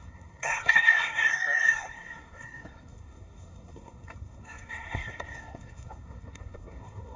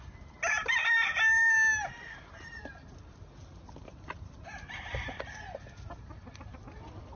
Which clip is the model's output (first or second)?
first